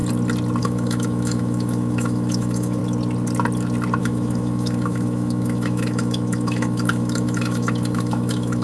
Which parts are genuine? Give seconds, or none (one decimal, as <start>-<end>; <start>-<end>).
0.0-0.6; 2.8-4.0